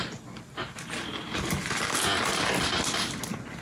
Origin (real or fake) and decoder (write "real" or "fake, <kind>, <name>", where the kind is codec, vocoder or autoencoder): real